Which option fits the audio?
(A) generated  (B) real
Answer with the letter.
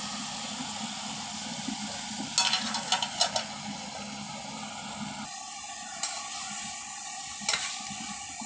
B